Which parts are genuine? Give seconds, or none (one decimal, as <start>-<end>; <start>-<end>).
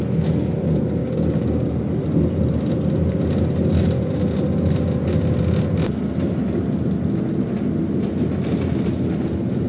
0.0-1.0; 1.7-9.7